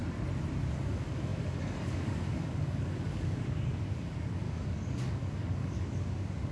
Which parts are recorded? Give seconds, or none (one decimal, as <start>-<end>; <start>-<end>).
0.0-0.6